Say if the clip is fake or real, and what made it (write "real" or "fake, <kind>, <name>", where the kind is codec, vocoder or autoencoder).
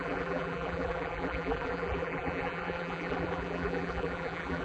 fake, vocoder, BigVGAN v2